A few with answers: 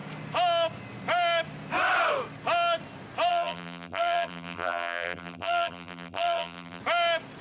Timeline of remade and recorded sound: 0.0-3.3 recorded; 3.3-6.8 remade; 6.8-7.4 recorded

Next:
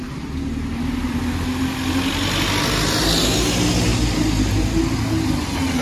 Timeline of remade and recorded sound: 0.0-5.8 recorded

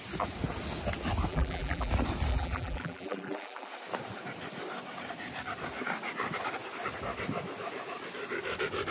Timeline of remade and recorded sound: 0.0-1.3 recorded; 1.3-1.9 remade; 1.9-2.3 recorded; 2.3-3.7 remade; 3.7-8.9 recorded

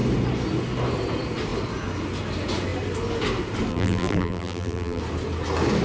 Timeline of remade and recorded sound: 0.0-3.7 recorded; 3.7-5.0 remade; 5.0-5.8 recorded